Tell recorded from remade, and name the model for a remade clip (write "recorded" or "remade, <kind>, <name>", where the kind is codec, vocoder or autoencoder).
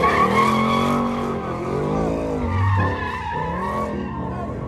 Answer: recorded